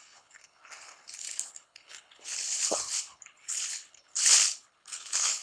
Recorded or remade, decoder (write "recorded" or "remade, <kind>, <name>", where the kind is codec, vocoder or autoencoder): remade, codec, HILCodec